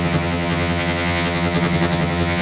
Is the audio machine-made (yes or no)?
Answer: yes